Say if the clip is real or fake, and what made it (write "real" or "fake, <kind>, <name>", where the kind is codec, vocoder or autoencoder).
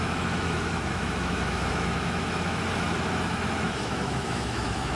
fake, autoencoder, DAC-VAE